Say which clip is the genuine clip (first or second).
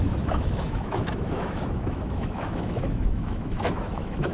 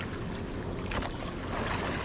second